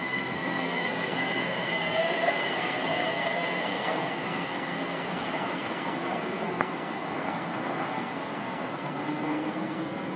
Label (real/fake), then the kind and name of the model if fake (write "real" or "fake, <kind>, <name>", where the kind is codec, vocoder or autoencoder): fake, codec, SNAC